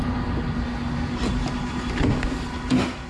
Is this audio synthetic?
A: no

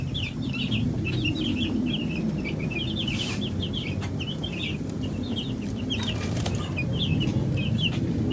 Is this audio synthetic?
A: yes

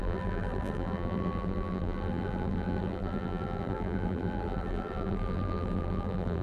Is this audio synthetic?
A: yes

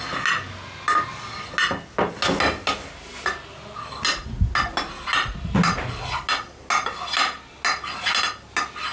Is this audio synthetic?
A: no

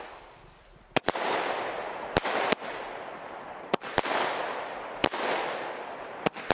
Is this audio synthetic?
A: no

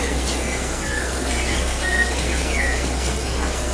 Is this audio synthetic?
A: yes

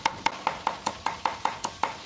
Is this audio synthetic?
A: no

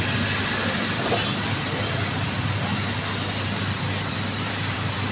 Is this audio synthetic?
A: yes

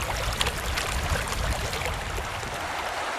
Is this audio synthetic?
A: no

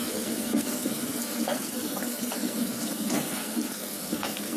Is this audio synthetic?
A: yes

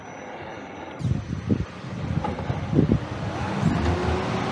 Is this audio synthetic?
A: no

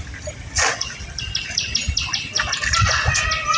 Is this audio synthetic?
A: no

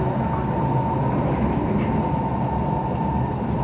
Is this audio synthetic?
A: no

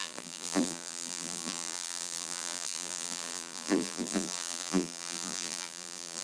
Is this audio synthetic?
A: yes